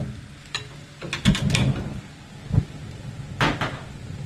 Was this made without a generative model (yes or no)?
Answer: yes